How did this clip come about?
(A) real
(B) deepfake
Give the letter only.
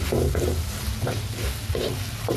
A